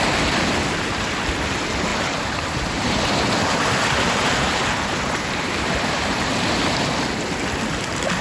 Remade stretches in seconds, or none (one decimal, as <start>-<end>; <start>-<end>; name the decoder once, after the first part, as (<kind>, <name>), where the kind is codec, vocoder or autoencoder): 1.9-6.3 (vocoder, BigVGAN v2)